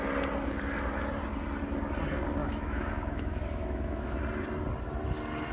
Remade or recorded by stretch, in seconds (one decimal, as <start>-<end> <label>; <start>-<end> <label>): 0.0-2.4 recorded; 2.4-4.2 remade; 4.2-5.5 recorded